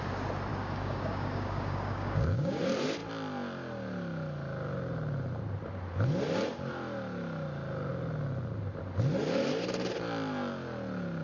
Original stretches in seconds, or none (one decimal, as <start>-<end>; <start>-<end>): 0.0-0.5; 2.6-11.2